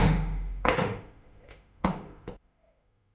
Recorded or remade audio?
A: remade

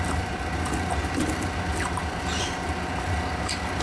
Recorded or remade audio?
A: recorded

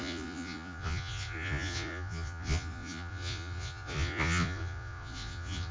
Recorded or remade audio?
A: remade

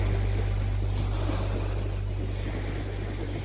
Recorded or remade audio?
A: recorded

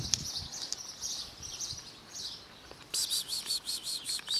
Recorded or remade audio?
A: recorded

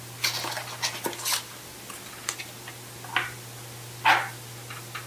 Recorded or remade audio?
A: recorded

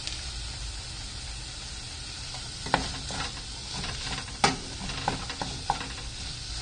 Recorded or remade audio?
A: recorded